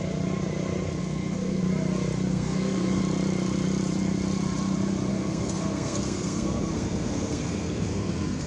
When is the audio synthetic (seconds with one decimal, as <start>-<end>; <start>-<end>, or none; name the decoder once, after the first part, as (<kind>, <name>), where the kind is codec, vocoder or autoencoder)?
1.0-1.6 (codec, SNAC); 2.3-3.0; 5.1-8.5